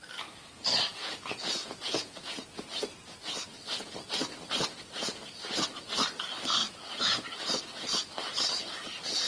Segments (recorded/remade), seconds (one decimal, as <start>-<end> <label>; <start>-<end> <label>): 0.0-0.9 recorded; 0.9-2.3 remade; 2.3-6.6 recorded; 6.6-7.6 remade; 7.6-9.3 recorded